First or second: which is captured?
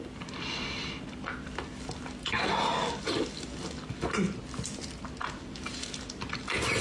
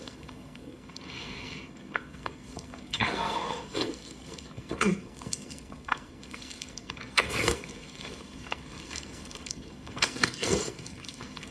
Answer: first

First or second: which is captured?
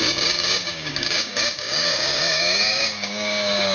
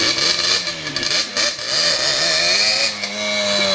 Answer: second